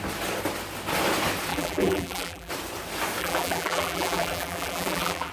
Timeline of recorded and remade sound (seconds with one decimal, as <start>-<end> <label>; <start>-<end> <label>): 0.0-1.5 recorded; 1.5-2.5 remade; 2.5-3.2 recorded; 3.2-5.3 remade